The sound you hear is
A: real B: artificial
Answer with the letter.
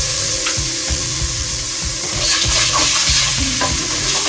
B